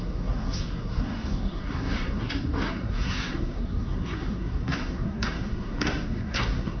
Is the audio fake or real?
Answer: fake